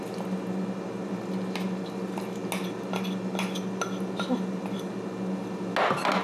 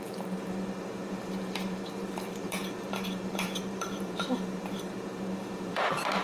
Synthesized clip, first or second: second